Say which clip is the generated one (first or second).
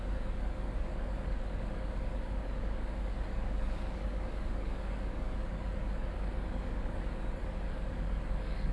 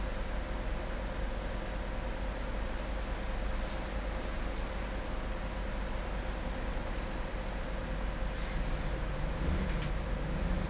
first